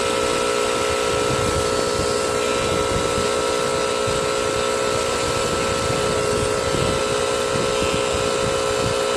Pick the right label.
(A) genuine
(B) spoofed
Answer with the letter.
A